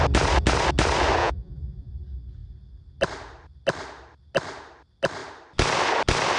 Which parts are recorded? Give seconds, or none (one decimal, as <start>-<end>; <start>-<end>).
0.0-1.2; 1.9-6.4